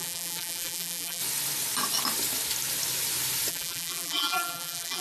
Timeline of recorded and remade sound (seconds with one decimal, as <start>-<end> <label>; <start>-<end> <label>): 0.0-1.2 remade; 1.2-3.5 recorded; 3.5-5.0 remade